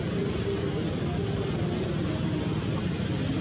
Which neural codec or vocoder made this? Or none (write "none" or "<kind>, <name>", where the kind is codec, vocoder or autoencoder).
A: none